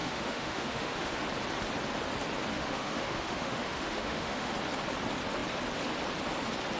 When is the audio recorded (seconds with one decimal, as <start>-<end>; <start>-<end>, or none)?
1.2-2.5; 4.5-6.8